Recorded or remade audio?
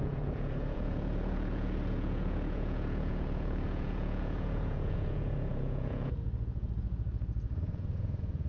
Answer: remade